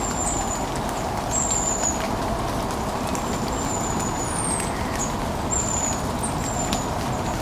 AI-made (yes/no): no